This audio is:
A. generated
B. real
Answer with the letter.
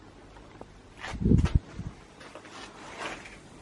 B